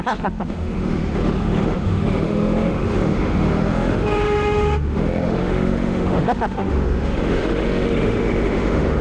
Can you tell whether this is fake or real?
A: fake